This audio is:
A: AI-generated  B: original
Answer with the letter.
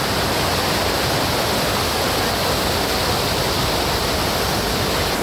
B